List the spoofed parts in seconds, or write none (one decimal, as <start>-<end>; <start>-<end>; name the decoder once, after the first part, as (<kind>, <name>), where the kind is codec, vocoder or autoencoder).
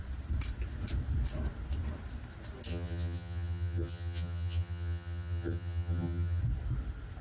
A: 2.7-6.4 (vocoder, HiFi-GAN)